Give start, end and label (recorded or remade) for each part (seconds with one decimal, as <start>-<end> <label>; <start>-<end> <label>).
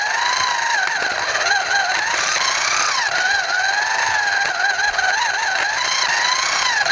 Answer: 0.0-6.9 recorded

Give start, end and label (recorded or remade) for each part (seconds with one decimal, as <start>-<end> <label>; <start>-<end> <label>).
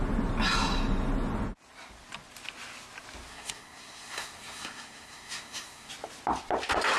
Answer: 0.0-3.3 recorded; 3.3-5.9 remade; 5.9-7.0 recorded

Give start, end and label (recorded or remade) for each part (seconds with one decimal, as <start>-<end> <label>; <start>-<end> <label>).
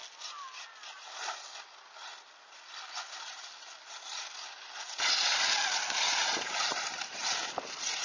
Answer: 0.0-6.2 recorded; 6.2-7.2 remade; 7.2-8.0 recorded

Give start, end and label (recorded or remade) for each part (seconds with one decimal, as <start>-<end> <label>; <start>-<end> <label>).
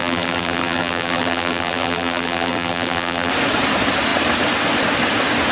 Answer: 0.0-3.3 remade; 3.3-5.5 recorded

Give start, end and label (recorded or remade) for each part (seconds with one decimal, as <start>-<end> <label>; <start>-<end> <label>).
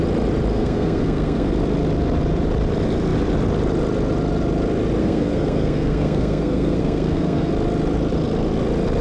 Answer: 0.0-0.5 recorded; 0.5-1.5 remade; 1.5-5.0 recorded; 5.0-7.5 remade; 7.5-9.0 recorded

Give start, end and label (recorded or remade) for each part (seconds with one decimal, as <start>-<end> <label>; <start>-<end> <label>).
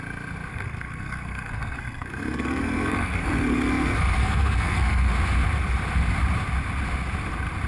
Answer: 0.0-0.5 recorded; 0.5-5.1 remade; 5.1-7.7 recorded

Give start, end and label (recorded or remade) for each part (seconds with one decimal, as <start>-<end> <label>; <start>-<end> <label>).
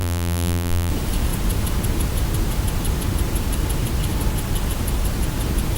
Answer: 0.0-0.9 remade; 0.9-5.8 recorded